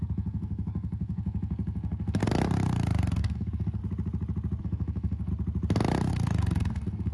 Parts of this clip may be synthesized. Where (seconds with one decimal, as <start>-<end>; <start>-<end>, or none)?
0.0-2.2; 3.2-3.8; 4.6-5.3; 6.1-7.1